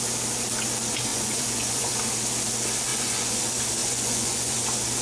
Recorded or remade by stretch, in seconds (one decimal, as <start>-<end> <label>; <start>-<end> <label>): 0.0-1.1 recorded; 1.1-2.0 remade; 2.0-2.9 recorded; 2.9-3.4 remade; 3.4-3.8 recorded; 3.8-4.6 remade; 4.6-5.0 recorded